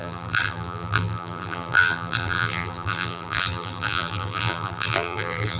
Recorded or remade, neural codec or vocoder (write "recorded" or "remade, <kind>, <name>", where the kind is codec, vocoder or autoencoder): remade, vocoder, BigVGAN v2